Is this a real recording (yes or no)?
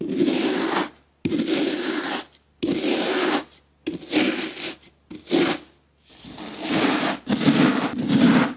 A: yes